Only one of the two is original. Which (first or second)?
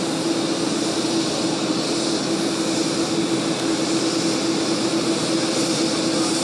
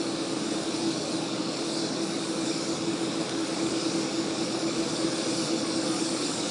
first